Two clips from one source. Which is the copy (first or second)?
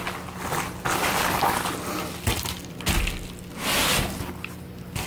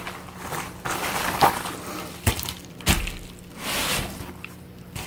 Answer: second